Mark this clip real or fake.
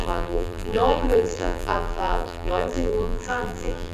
fake